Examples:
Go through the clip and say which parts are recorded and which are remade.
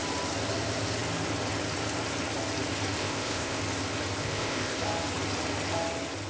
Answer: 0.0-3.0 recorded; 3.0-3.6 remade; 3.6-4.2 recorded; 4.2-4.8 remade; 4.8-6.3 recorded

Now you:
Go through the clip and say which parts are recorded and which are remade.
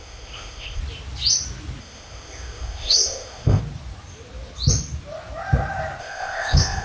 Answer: 0.0-0.8 remade; 0.8-1.8 recorded; 1.8-3.6 remade; 3.6-6.0 recorded; 6.0-6.8 remade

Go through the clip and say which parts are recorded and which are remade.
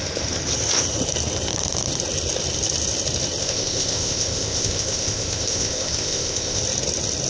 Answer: 0.0-3.4 recorded; 3.4-6.6 remade; 6.6-7.3 recorded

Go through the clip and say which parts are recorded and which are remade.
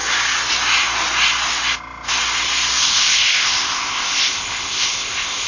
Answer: 0.0-2.8 recorded; 2.8-5.5 remade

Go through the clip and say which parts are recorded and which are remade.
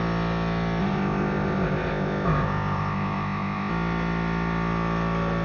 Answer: 0.0-0.8 recorded; 0.8-3.7 remade; 3.7-5.4 recorded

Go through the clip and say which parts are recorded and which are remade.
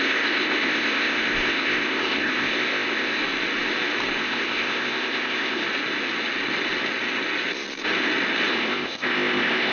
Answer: 0.0-3.2 remade; 3.2-4.2 recorded; 4.2-5.6 remade; 5.6-8.5 recorded; 8.5-9.7 remade